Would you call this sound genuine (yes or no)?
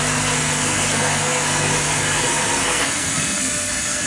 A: no